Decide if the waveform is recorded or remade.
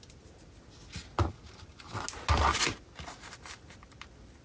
recorded